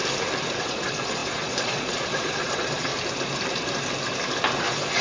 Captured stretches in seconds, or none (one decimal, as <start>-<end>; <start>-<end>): 0.0-0.6; 2.9-4.6